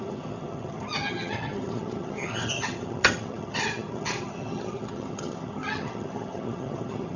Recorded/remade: remade